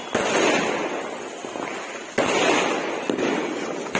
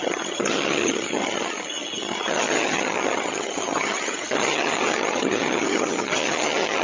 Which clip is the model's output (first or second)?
second